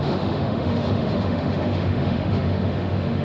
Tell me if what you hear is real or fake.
fake